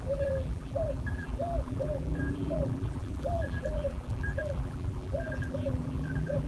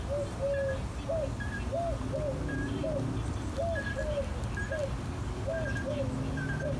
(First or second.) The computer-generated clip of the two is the first